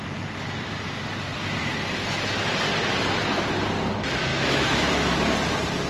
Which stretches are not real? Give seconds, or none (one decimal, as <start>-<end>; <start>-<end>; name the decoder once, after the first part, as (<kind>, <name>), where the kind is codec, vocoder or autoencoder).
4.3-5.1 (autoencoder, DAC-VAE)